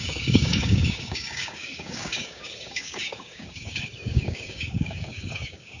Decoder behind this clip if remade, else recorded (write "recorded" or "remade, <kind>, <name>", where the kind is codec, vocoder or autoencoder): remade, codec, DAC